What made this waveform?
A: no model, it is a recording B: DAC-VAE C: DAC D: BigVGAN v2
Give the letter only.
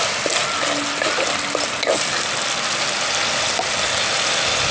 A